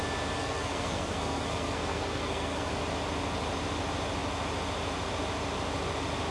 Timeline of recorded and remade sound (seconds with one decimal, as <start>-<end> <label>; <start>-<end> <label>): 0.0-0.4 recorded; 0.4-2.7 remade; 2.7-6.3 recorded